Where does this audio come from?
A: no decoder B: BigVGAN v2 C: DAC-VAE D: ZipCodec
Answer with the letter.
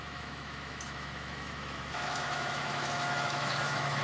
C